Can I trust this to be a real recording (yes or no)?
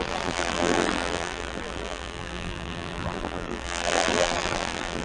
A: no